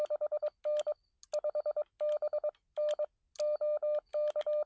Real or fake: real